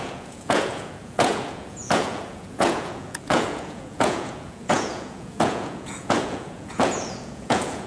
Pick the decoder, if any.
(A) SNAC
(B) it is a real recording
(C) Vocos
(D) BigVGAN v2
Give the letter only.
C